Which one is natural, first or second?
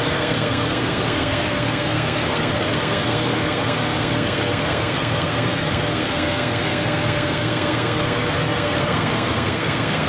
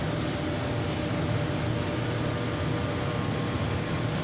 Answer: second